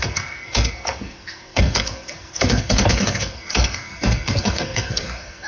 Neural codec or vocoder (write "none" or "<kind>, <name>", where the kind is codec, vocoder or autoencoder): codec, SNAC